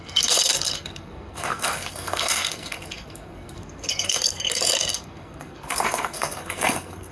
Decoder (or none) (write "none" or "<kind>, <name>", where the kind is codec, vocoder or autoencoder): codec, SNAC